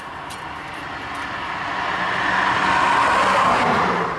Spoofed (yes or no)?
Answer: no